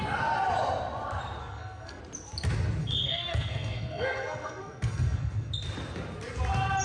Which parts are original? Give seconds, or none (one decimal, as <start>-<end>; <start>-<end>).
0.0-1.4; 2.0-2.8; 5.5-6.8